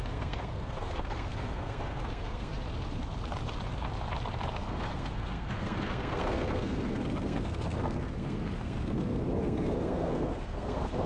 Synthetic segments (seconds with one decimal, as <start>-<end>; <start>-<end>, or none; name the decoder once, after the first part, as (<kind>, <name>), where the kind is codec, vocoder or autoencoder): 0.0-2.5 (codec, SNAC); 4.5-11.1